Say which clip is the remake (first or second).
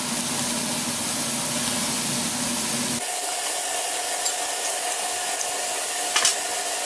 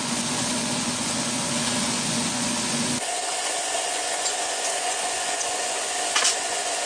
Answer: second